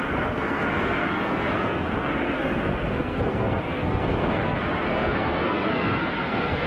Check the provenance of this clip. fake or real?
fake